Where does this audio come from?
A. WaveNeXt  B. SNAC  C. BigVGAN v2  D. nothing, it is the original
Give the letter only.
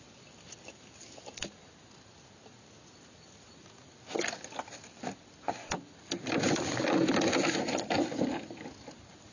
D